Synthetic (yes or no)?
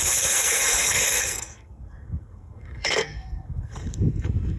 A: yes